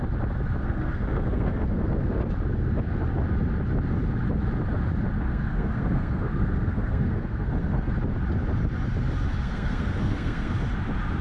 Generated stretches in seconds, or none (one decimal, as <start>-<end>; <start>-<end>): 0.6-2.1; 5.3-7.9; 9.3-10.5